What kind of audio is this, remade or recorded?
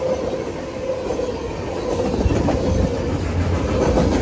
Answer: recorded